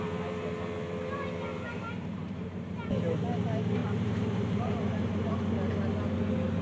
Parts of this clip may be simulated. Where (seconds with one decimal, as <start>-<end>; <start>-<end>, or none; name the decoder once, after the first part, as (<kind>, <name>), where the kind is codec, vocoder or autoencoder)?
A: 1.5-2.8 (vocoder, BigVGAN v2); 3.8-4.8